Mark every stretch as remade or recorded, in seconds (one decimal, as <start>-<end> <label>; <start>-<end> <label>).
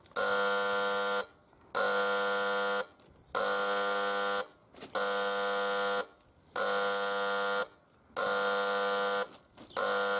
0.0-10.2 recorded